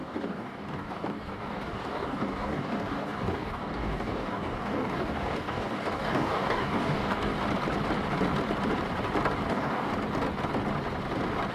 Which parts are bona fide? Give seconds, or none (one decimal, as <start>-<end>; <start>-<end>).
7.3-9.5; 9.9-11.5